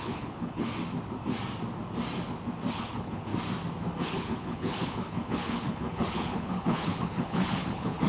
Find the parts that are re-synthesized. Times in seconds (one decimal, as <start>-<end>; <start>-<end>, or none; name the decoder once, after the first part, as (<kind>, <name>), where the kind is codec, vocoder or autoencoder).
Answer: 0.0-0.7 (codec, HILCodec); 2.7-3.3; 4.0-8.1